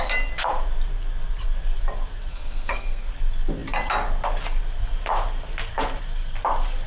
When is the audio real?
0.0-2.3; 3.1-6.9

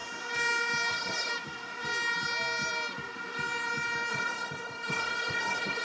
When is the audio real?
0.0-0.9; 1.3-4.1

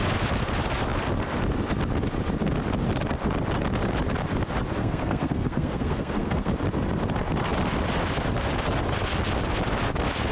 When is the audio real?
0.0-4.8; 6.5-10.3

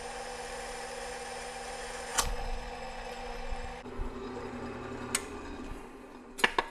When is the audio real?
0.0-2.1; 3.2-6.7

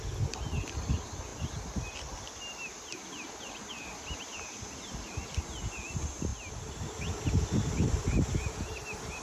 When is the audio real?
0.0-9.2